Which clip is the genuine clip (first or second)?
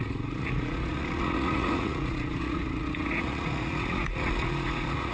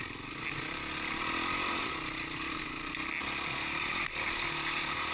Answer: second